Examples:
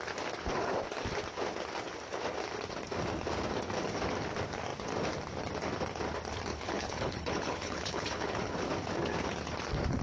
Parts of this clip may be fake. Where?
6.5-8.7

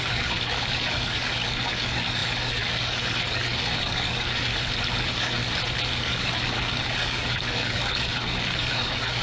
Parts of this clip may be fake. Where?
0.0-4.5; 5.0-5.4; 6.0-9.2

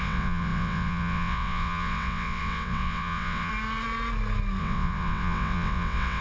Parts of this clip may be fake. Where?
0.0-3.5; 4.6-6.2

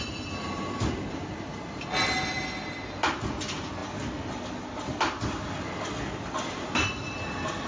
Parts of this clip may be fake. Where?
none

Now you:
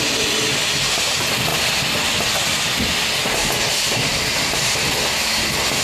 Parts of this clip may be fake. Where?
1.5-2.9; 4.1-4.8

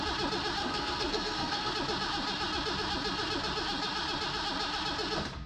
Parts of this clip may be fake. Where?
0.6-1.7

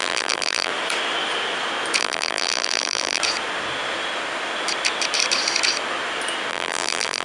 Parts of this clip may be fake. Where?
0.0-0.7; 2.0-3.2; 6.5-7.2